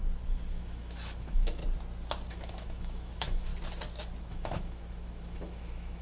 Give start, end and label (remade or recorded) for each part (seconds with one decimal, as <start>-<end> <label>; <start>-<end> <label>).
0.0-0.5 recorded; 0.5-1.6 remade; 1.6-2.3 recorded; 2.3-3.5 remade; 3.5-4.3 recorded; 4.3-6.0 remade